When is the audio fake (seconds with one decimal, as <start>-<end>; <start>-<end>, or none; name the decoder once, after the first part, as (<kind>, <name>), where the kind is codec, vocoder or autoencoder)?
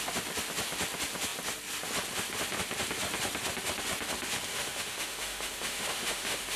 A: 4.5-6.6 (autoencoder, DAC-VAE)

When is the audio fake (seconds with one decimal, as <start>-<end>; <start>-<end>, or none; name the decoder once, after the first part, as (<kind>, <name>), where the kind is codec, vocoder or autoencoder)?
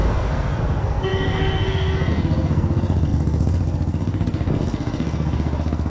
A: 0.0-5.9 (codec, SNAC)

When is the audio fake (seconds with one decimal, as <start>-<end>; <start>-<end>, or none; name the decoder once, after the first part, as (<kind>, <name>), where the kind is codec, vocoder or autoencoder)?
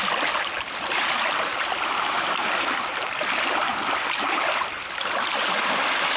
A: none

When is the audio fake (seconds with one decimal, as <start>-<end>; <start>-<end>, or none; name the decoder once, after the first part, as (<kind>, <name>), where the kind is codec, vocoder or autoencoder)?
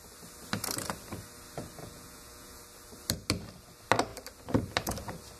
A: 1.8-2.6 (vocoder, Vocos)